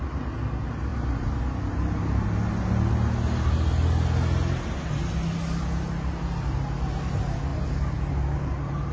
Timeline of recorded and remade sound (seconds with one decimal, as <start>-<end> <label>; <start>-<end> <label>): 0.0-8.9 recorded